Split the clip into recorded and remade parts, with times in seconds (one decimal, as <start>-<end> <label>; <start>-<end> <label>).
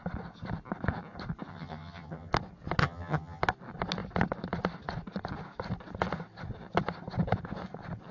0.0-1.5 recorded; 1.5-2.3 remade; 2.3-2.8 recorded; 2.8-3.4 remade; 3.4-8.1 recorded